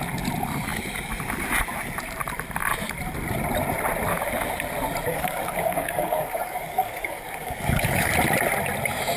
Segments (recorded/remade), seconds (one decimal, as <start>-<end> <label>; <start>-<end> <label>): 0.0-5.1 recorded; 5.1-8.1 remade; 8.1-9.2 recorded